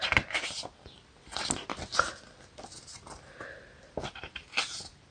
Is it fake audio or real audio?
real